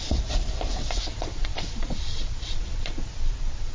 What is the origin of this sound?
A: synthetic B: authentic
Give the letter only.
A